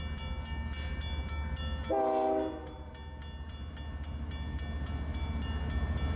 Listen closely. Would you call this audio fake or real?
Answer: real